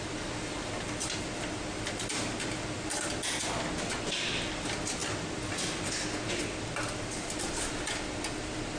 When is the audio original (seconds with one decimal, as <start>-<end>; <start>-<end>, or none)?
0.0-8.8